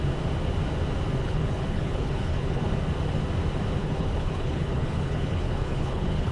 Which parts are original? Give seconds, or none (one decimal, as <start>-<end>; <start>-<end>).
0.0-1.2; 2.6-3.8